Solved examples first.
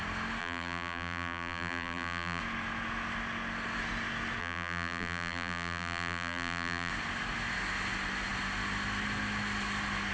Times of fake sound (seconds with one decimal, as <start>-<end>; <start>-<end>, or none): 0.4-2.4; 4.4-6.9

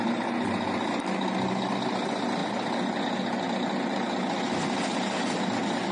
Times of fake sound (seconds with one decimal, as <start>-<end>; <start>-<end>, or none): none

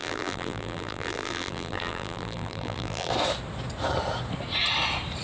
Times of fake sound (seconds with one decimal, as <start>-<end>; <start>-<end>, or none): 0.0-3.1

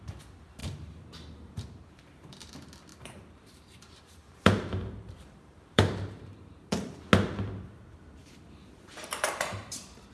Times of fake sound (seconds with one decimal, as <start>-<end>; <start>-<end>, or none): 0.6-2.5; 2.9-7.0; 8.2-10.1

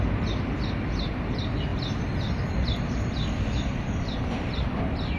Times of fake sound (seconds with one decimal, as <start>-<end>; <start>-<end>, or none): 1.7-4.8

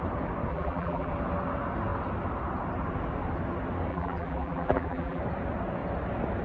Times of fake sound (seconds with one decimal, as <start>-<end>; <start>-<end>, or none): 0.5-1.1; 3.9-5.2